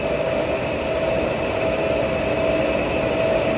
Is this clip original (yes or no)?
yes